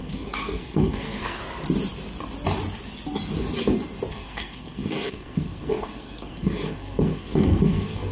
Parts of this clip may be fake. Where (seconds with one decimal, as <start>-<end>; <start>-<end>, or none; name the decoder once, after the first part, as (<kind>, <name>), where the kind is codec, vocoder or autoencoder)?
0.0-1.4 (codec, SNAC); 4.1-8.1